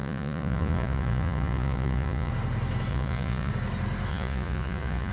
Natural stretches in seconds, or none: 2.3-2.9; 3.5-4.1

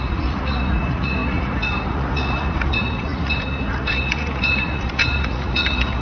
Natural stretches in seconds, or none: none